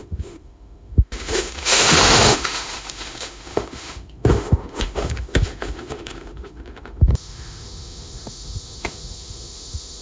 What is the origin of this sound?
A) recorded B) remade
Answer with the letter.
B